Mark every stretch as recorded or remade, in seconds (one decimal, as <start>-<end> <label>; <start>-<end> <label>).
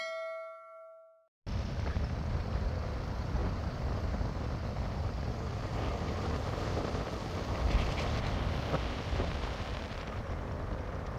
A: 0.0-11.2 recorded